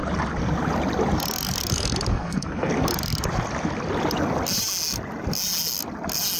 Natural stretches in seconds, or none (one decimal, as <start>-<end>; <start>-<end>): 0.0-2.1; 2.7-6.4

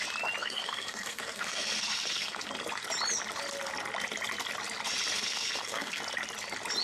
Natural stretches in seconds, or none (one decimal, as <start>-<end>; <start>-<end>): 0.0-0.4; 2.5-5.1; 6.0-6.8

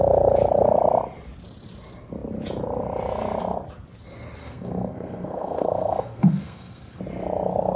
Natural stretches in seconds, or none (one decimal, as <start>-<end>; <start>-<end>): 0.0-4.4; 7.0-7.8

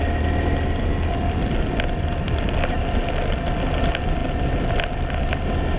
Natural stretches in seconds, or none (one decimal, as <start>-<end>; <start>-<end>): 0.0-5.8

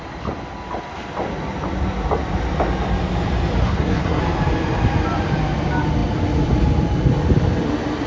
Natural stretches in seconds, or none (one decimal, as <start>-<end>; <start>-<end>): 0.0-3.6; 4.2-8.1

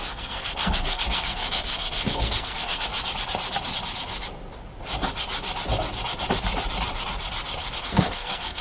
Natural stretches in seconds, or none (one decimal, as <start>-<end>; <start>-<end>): 2.9-7.8